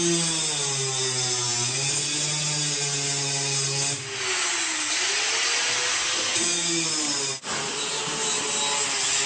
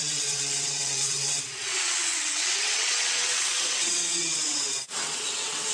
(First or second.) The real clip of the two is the first